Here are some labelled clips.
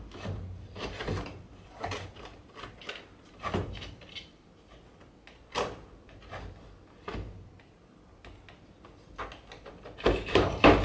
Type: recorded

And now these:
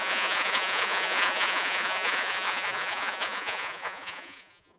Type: remade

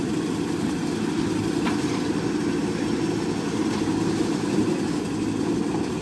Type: recorded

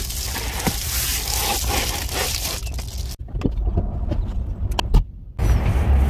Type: recorded